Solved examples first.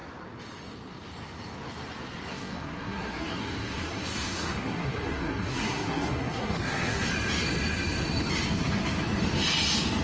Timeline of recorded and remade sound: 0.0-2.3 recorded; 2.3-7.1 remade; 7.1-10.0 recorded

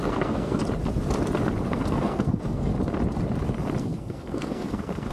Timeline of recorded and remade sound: 0.0-0.6 remade; 0.6-1.7 recorded; 1.7-2.7 remade; 2.7-3.8 recorded; 3.8-5.1 remade